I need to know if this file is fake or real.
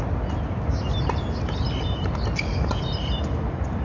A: real